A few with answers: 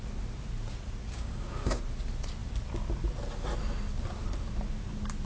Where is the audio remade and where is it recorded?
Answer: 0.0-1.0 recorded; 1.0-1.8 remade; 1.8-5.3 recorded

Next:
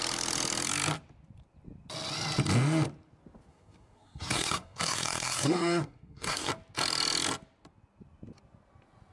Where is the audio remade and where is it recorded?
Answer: 0.0-3.5 recorded; 3.5-6.5 remade; 6.5-9.1 recorded

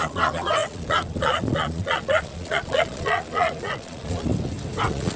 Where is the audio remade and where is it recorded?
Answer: 0.0-4.3 remade; 4.3-4.8 recorded; 4.8-5.2 remade

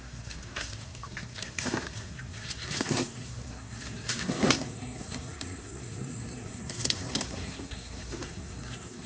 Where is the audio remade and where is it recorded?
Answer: 0.0-9.1 remade

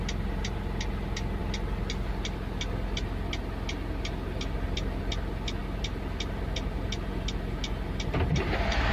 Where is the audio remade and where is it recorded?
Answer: 0.0-8.9 recorded

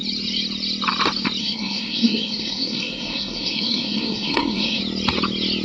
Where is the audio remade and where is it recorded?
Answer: 0.0-1.4 recorded; 1.4-4.8 remade; 4.8-5.6 recorded

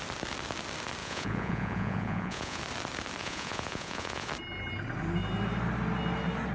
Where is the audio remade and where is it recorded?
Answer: 0.0-1.0 recorded; 1.0-2.6 remade; 2.6-3.2 recorded; 3.2-4.3 remade; 4.3-6.5 recorded